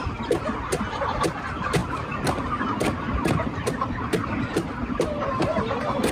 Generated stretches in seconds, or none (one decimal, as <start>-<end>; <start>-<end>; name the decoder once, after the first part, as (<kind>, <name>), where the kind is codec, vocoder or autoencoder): none